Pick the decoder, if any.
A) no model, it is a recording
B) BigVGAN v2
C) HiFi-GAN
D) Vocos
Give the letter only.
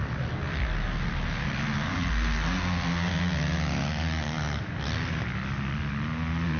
A